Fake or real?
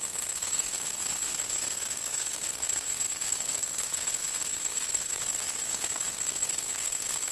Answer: fake